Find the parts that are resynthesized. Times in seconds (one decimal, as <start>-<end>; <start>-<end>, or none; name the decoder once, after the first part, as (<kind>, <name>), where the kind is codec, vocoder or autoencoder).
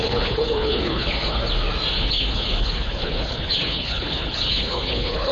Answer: 0.0-1.4 (codec, HILCodec); 1.9-5.3